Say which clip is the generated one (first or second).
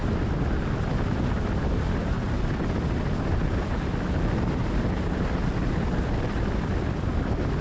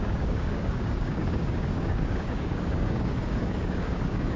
second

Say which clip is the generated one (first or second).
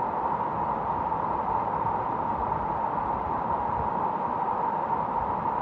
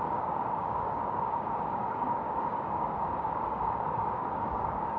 second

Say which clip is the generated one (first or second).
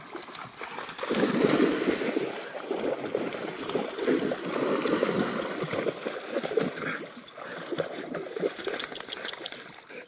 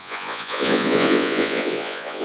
second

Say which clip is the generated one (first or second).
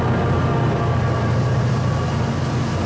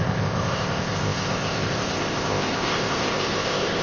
second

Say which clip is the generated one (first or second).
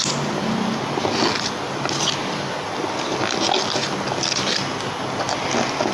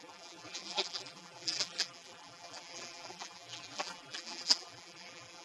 second